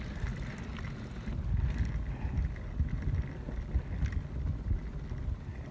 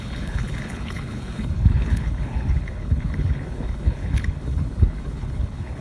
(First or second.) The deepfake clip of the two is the second